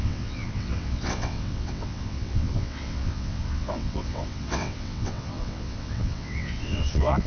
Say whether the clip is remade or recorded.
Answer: remade